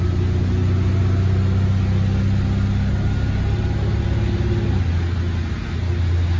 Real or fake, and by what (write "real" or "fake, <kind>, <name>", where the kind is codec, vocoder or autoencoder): real